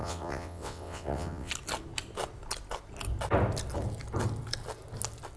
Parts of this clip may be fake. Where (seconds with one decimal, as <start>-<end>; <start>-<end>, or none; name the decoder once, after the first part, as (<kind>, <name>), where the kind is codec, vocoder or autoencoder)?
0.0-1.5 (vocoder, WaveNeXt)